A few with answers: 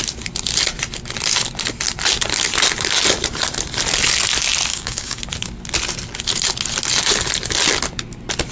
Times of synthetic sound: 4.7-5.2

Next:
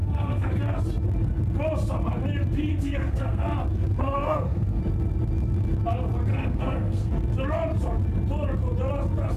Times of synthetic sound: 0.0-0.5; 2.7-3.4; 4.0-4.8; 6.3-7.1